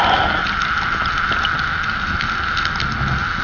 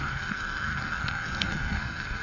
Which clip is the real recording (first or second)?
first